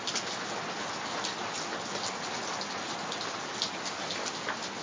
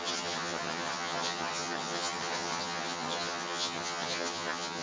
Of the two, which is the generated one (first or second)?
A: second